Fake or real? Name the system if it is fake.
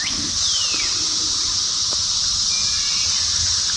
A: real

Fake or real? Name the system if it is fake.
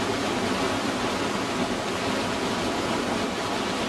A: real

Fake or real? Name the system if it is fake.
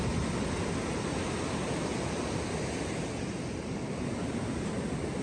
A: real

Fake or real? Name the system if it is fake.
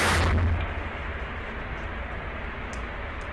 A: real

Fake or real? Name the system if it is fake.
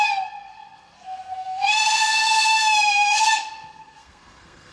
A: fake, codec, SNAC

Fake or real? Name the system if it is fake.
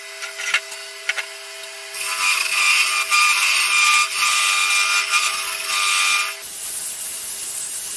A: real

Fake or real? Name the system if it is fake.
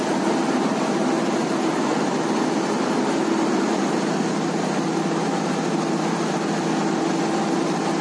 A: real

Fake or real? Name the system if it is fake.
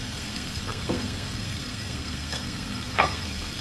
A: fake, codec, SNAC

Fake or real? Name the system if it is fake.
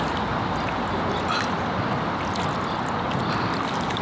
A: real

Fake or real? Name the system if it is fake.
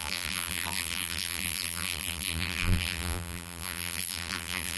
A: fake, vocoder, BigVGAN v2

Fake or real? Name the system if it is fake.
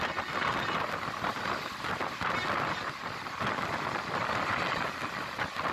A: real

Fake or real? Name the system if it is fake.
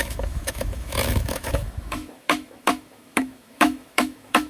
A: fake, autoencoder, DAC-VAE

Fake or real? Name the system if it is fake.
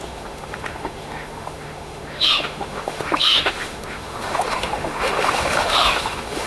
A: fake, autoencoder, DAC-VAE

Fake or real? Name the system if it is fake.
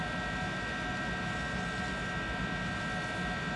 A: real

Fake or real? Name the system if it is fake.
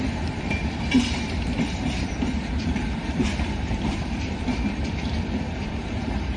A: fake, vocoder, BigVGAN v2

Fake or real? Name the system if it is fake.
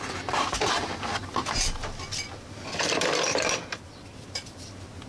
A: real